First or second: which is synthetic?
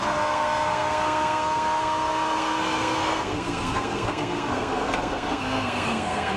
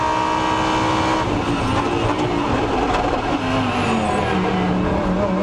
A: first